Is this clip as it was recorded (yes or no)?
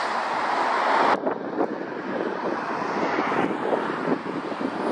yes